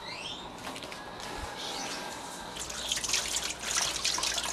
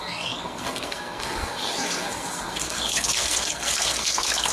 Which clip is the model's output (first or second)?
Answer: second